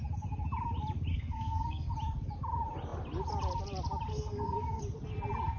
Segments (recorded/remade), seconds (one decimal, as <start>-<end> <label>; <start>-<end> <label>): 0.0-1.1 recorded; 1.1-1.9 remade; 1.9-4.1 recorded; 4.1-4.8 remade; 4.8-5.6 recorded